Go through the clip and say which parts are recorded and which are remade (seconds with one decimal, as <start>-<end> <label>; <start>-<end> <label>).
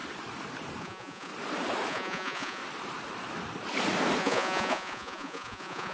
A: 0.0-0.8 recorded; 0.8-1.3 remade; 1.3-1.9 recorded; 1.9-2.6 remade; 2.6-4.2 recorded; 4.2-5.9 remade